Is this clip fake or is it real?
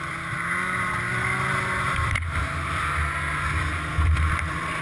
real